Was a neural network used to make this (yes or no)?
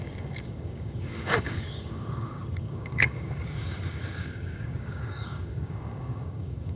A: yes